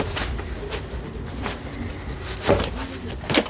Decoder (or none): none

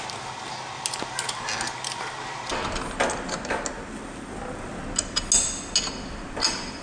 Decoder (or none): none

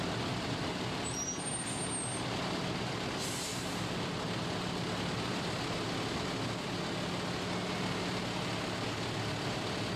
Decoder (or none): none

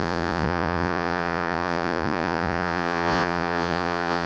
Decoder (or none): vocoder, Vocos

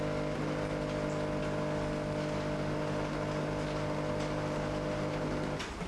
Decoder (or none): none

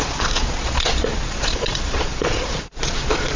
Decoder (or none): vocoder, Vocos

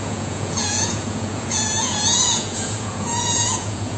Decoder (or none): vocoder, Vocos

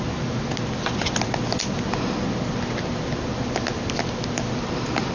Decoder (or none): none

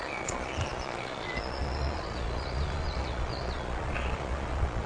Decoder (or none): vocoder, Vocos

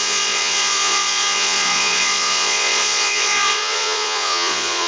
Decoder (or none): vocoder, Vocos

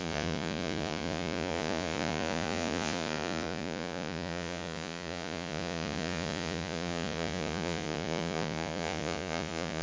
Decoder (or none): vocoder, Vocos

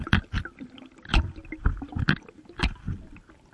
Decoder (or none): none